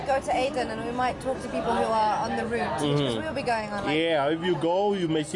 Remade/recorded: recorded